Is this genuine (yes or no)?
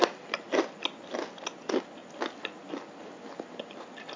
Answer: yes